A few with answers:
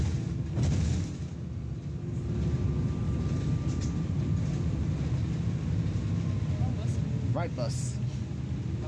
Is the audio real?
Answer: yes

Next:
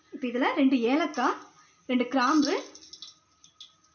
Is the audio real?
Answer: yes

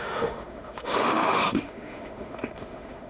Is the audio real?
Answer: no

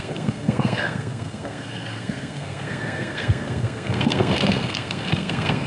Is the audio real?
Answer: no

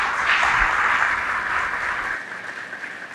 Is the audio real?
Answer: yes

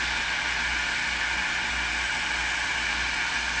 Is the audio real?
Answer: yes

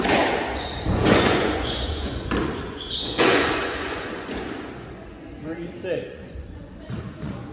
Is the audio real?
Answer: no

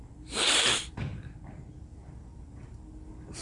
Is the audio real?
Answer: yes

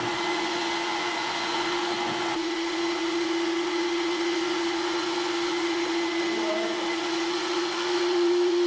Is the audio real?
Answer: no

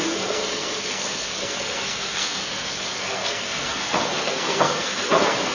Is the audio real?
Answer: no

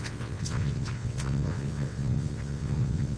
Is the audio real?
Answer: no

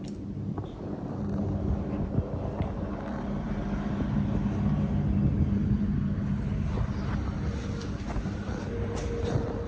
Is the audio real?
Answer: yes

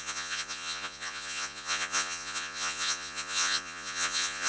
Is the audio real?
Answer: no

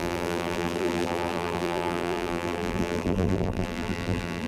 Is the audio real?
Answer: no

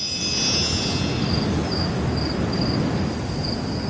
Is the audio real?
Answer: yes